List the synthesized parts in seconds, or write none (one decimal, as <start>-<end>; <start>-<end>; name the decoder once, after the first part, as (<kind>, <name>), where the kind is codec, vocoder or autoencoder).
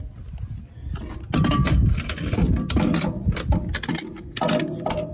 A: none